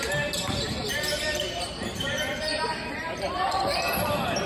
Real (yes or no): no